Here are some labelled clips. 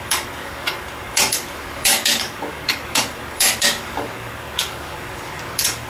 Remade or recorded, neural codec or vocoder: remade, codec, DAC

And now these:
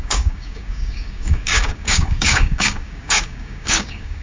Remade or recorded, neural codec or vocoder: remade, codec, DAC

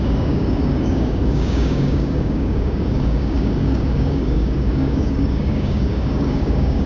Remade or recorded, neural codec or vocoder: remade, codec, DAC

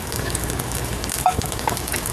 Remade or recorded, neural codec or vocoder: remade, codec, DAC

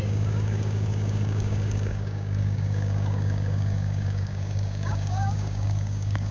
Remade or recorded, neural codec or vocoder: remade, codec, DAC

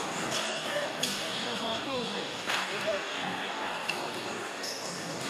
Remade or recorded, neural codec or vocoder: remade, codec, DAC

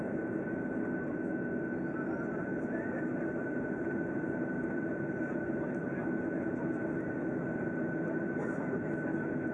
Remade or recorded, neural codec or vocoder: recorded